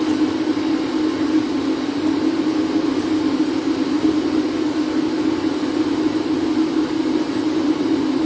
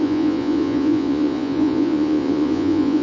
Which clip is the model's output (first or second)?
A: second